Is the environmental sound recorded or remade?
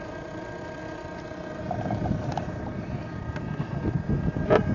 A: recorded